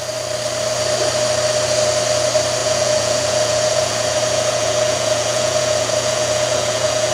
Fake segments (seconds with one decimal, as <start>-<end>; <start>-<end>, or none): 2.6-7.1